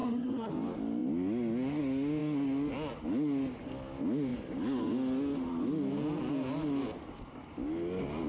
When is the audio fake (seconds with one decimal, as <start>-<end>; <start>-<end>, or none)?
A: 0.0-0.5